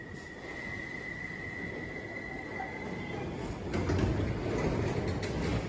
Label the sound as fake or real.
real